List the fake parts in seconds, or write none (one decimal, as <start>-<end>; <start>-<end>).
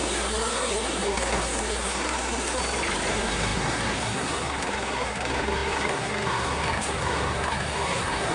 0.0-2.6; 3.1-8.3